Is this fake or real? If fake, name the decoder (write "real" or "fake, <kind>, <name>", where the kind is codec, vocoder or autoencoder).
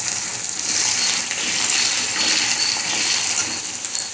real